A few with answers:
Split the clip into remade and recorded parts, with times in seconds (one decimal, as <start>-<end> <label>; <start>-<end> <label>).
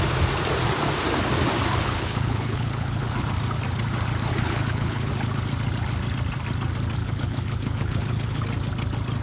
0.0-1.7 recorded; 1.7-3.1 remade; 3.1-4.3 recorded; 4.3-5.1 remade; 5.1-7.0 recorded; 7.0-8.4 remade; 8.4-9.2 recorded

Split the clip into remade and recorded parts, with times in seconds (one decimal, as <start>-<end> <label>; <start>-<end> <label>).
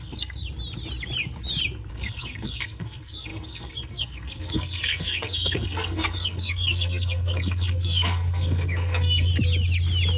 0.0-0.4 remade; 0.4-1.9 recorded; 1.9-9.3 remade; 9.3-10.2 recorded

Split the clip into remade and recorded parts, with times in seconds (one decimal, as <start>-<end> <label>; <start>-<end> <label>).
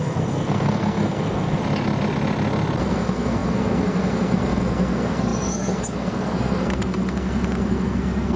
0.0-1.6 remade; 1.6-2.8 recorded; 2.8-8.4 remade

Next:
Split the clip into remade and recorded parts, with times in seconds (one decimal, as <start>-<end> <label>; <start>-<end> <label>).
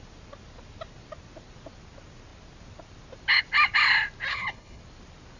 0.0-4.3 recorded; 4.3-4.8 remade; 4.8-5.4 recorded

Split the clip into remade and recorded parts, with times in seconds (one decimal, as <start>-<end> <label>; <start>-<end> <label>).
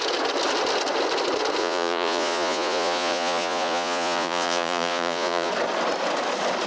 0.0-1.6 recorded; 1.6-5.5 remade; 5.5-6.7 recorded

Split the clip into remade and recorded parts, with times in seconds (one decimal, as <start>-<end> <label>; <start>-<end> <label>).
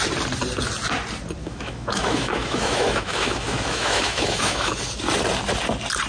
0.0-1.4 recorded; 1.4-4.7 remade; 4.7-6.1 recorded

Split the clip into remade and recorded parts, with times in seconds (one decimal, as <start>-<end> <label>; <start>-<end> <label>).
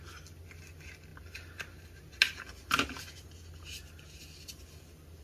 0.0-5.2 recorded